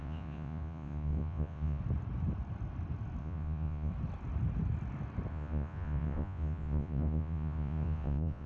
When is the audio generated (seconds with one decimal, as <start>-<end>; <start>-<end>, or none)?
0.0-1.8; 3.2-3.9; 5.3-8.5